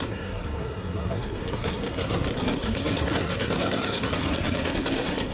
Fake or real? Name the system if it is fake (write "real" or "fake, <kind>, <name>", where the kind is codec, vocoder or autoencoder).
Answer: fake, codec, SNAC